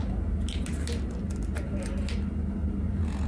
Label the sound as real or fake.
real